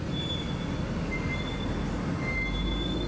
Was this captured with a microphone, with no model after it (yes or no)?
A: yes